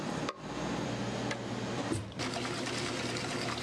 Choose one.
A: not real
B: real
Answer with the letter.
B